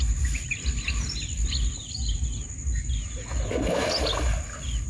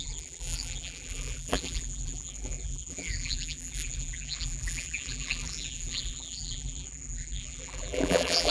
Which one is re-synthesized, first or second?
second